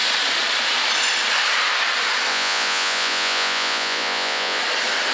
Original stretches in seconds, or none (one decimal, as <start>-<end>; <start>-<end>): 0.0-2.3; 4.6-5.1